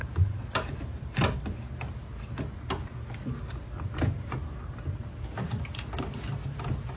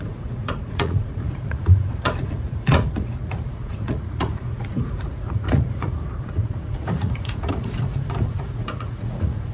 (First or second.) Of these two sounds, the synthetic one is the second